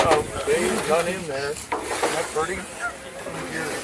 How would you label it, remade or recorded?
recorded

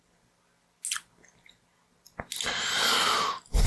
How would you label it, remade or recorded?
recorded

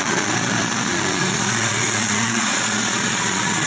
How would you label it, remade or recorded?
remade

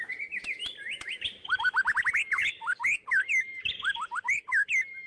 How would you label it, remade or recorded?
recorded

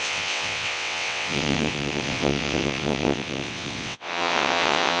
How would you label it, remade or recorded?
remade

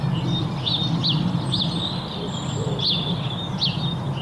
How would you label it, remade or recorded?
recorded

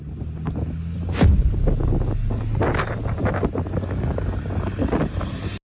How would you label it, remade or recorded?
recorded